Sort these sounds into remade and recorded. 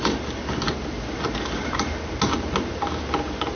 recorded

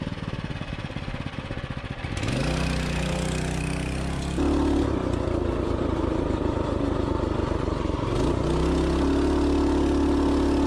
recorded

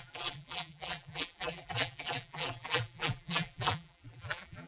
remade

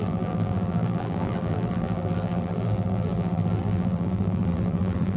remade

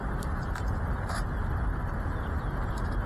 remade